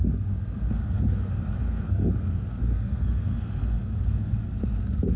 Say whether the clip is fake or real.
fake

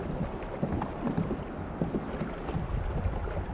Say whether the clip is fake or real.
real